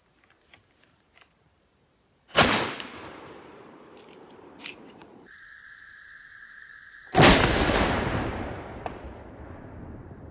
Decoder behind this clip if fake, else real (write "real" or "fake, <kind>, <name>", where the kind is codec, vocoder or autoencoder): fake, vocoder, BigVGAN v2